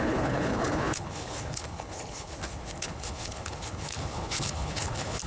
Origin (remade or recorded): remade